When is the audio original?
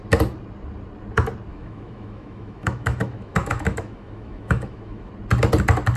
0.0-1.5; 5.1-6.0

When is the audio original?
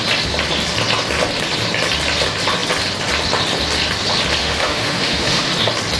0.0-4.4; 5.5-6.0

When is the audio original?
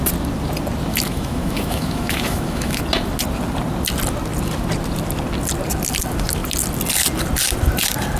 0.0-0.9; 2.8-8.2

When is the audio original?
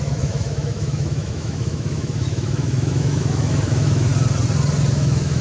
4.1-4.9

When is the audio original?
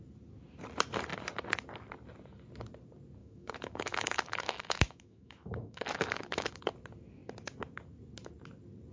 0.0-3.2; 6.6-8.9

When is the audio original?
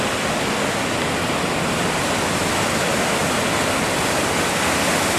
0.0-5.2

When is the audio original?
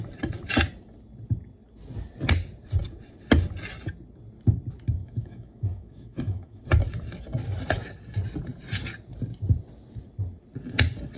0.0-5.0; 6.6-11.2